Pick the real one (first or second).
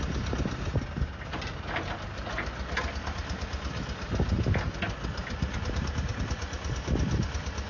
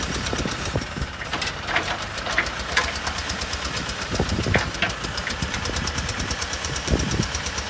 first